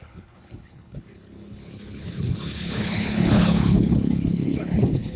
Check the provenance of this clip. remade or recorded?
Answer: remade